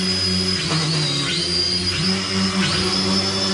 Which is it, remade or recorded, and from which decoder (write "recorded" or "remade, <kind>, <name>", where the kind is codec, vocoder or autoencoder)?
recorded